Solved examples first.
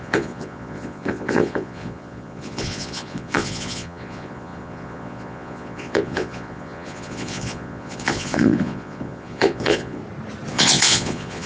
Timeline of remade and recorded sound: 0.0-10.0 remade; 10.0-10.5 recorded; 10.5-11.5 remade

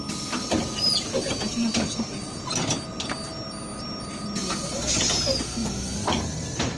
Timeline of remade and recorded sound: 0.0-6.8 recorded

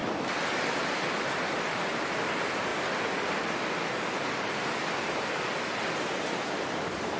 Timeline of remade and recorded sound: 0.0-7.2 recorded

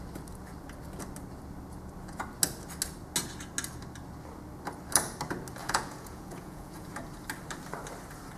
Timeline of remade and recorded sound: 0.0-5.6 recorded; 5.6-6.9 remade; 6.9-8.4 recorded

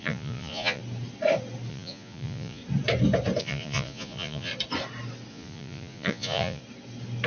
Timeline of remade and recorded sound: 0.0-0.8 remade; 0.8-1.7 recorded; 1.7-2.6 remade; 2.6-3.4 recorded; 3.4-4.5 remade; 4.5-5.3 recorded; 5.3-6.6 remade; 6.6-7.3 recorded

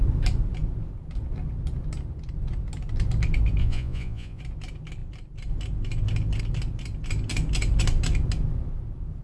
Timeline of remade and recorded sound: 0.0-3.6 recorded; 3.6-4.4 remade; 4.4-9.2 recorded